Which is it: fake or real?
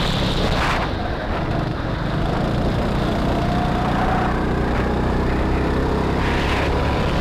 real